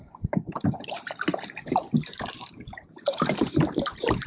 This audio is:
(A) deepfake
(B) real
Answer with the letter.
A